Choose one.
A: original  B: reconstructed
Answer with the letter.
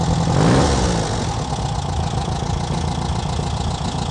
A